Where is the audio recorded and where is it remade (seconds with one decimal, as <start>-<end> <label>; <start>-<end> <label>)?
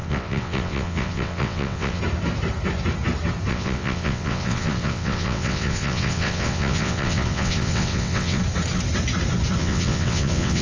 0.0-2.0 remade; 2.0-3.5 recorded; 3.5-8.4 remade; 8.4-9.6 recorded; 9.6-10.6 remade